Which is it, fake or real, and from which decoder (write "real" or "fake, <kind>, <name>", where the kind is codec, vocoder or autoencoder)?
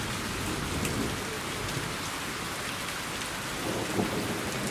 real